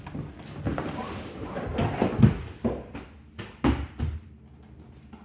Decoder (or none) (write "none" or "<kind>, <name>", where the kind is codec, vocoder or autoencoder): none